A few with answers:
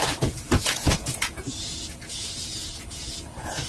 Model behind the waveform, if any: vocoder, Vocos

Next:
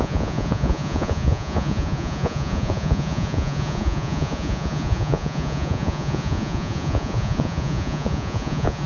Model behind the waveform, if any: vocoder, Vocos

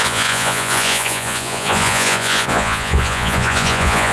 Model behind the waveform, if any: vocoder, Vocos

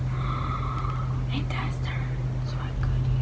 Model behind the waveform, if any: none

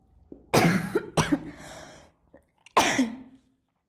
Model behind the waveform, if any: none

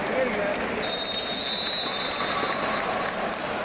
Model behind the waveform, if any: none